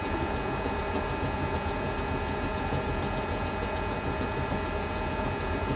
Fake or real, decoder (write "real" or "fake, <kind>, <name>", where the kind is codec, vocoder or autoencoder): fake, vocoder, Vocos